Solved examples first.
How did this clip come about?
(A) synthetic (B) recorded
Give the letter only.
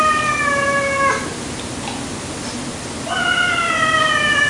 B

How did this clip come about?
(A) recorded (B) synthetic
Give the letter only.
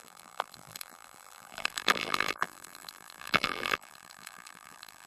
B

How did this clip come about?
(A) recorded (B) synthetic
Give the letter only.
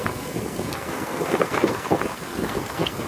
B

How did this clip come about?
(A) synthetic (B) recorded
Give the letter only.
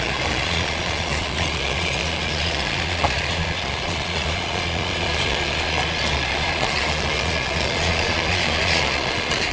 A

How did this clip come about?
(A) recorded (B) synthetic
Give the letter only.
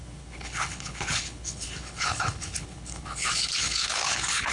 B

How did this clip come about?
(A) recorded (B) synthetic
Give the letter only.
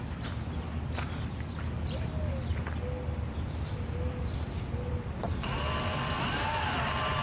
A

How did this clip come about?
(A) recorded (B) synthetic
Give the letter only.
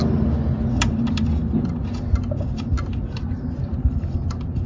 A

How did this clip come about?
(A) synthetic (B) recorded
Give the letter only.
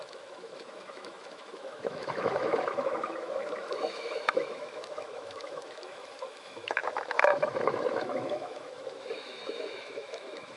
A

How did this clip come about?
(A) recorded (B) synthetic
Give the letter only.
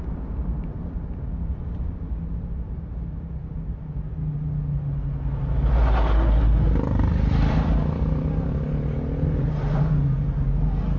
A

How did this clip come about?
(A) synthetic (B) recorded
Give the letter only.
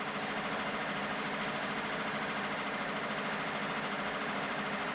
B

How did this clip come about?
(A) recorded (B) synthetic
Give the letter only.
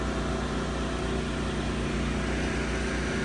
A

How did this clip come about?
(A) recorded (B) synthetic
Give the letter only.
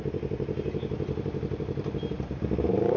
A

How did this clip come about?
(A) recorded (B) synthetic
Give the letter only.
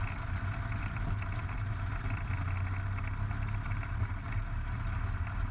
A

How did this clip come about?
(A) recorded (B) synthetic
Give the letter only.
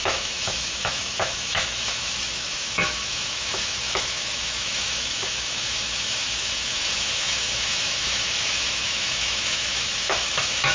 B